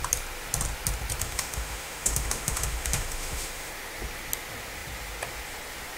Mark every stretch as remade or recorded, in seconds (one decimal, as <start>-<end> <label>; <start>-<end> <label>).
0.0-1.2 recorded; 1.2-3.7 remade; 3.7-6.0 recorded